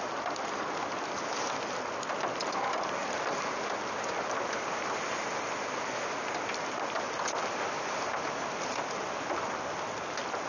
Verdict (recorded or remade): recorded